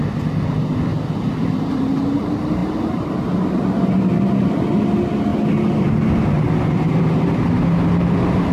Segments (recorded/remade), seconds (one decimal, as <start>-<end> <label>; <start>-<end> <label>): 0.0-8.5 recorded